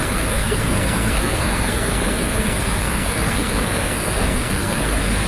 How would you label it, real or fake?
fake